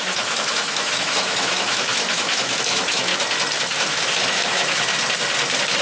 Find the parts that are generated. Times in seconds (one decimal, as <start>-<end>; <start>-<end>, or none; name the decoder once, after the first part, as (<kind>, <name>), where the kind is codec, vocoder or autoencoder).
0.0-3.1 (autoencoder, DAC-VAE); 3.9-4.9